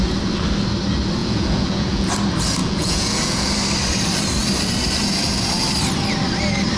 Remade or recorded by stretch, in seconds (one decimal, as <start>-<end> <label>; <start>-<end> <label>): 0.0-1.2 recorded; 1.2-2.1 remade; 2.1-2.6 recorded; 2.6-3.5 remade; 3.5-6.8 recorded